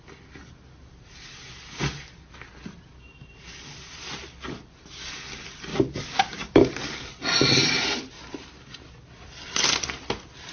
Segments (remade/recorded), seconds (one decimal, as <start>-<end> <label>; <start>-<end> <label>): 0.0-5.7 recorded; 5.7-7.1 remade; 7.1-10.5 recorded